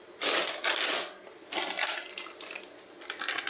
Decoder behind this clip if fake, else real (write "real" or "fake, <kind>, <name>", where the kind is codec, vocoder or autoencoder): real